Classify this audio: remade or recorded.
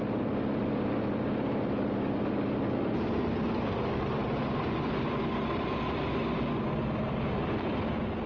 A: remade